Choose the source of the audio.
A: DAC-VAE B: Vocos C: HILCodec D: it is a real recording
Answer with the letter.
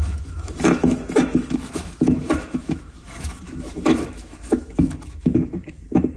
A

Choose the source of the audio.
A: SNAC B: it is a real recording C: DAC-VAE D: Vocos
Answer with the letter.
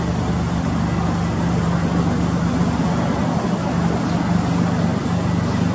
B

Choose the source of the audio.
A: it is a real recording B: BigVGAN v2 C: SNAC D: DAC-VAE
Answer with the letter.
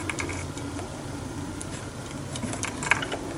A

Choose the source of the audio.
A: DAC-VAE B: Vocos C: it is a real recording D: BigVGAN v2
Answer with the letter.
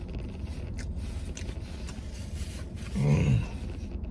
C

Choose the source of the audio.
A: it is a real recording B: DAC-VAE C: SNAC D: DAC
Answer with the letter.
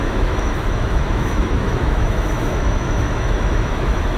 B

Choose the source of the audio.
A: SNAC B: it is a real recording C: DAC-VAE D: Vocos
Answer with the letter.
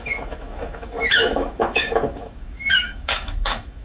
C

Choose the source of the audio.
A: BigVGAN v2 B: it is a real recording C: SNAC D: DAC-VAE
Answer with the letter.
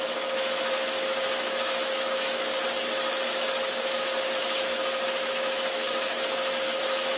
D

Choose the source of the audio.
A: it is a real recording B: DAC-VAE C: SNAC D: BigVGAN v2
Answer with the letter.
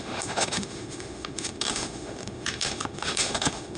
B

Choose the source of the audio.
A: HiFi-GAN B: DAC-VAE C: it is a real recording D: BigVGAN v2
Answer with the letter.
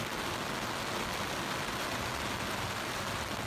C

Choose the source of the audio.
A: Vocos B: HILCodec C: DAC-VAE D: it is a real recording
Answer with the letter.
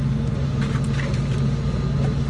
D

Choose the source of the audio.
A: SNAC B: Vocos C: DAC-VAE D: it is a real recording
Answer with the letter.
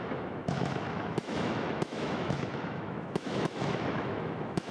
C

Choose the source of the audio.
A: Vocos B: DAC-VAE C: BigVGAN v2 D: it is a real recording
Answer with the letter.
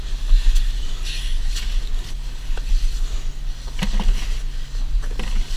D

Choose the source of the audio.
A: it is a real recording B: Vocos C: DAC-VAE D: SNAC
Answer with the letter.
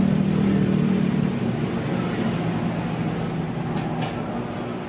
A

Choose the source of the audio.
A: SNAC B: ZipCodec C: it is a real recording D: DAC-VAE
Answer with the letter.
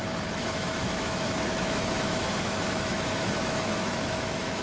D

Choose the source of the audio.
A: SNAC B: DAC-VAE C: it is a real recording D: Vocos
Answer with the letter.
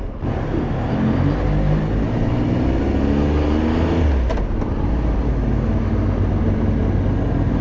C